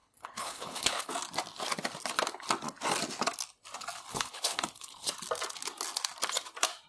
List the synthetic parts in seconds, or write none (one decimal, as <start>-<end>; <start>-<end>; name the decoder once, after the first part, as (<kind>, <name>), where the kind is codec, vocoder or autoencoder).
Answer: 0.0-1.1 (codec, HILCodec); 4.1-5.1